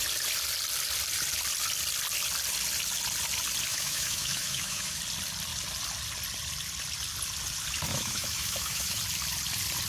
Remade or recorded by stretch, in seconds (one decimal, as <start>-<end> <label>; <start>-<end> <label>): 0.0-3.7 recorded; 3.7-5.0 remade; 5.0-7.9 recorded; 7.9-9.0 remade; 9.0-9.9 recorded